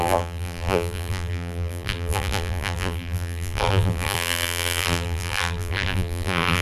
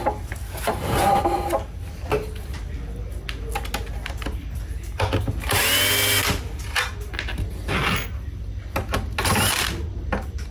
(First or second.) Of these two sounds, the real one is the second